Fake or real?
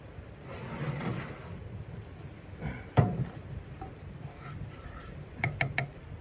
fake